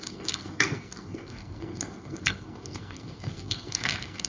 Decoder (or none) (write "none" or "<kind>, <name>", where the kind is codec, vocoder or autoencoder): codec, SNAC